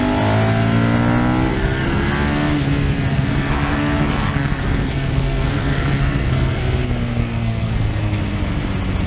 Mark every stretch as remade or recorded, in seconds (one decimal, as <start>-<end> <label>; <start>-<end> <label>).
0.0-1.5 recorded; 1.5-2.1 remade; 2.1-3.1 recorded; 3.1-6.6 remade; 6.6-7.2 recorded; 7.2-8.2 remade; 8.2-9.1 recorded